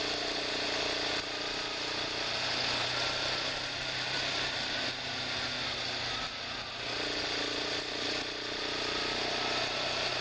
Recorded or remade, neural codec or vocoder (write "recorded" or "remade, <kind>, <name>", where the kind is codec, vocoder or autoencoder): recorded